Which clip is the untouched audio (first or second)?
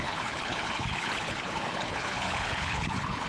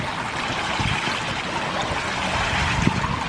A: second